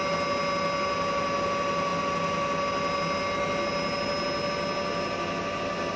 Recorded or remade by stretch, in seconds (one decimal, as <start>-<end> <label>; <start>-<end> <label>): 0.0-6.0 recorded